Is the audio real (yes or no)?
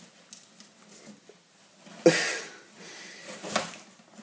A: yes